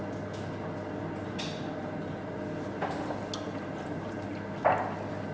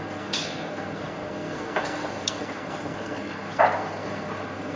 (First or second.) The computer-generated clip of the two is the second